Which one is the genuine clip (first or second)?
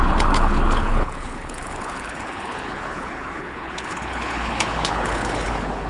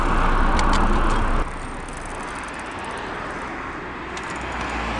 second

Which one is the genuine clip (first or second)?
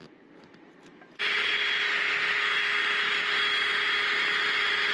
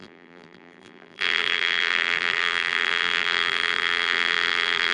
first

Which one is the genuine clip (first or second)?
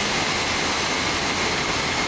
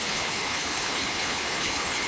first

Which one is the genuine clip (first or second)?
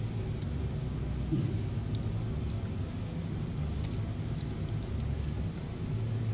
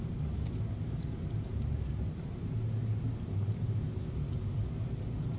first